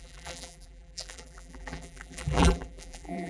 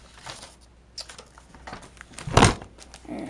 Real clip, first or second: second